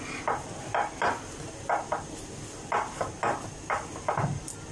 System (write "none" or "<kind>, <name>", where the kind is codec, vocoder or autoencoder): none